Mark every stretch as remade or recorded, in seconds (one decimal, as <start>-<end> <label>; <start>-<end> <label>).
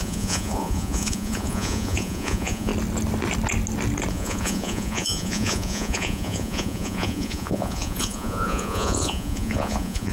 0.0-2.7 remade; 2.7-4.1 recorded; 4.1-10.1 remade